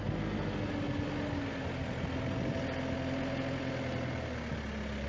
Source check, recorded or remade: recorded